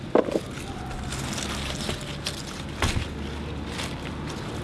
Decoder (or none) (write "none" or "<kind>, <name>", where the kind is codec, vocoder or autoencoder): none